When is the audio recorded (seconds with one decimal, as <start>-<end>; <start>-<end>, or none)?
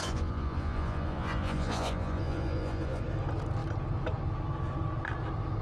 3.0-5.6